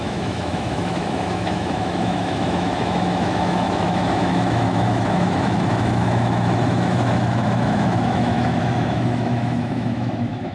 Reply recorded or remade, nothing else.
remade